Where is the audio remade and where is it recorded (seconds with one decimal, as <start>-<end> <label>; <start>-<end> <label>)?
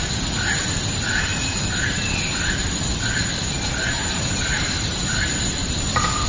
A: 0.0-6.3 recorded